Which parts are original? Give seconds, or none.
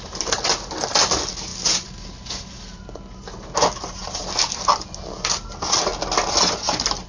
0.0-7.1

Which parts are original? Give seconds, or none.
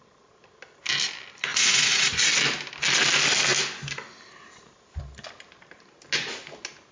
0.0-1.5; 2.3-6.9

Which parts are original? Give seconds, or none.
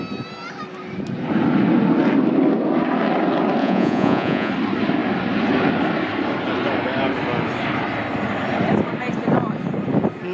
0.0-3.6; 4.5-10.3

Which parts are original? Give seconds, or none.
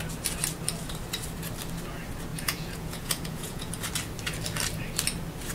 0.0-2.3; 3.7-5.5